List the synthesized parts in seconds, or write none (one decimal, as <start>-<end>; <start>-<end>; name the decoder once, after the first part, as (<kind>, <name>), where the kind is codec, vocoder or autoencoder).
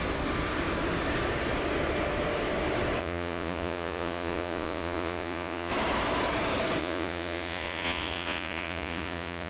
3.0-5.7 (vocoder, Vocos); 6.8-9.5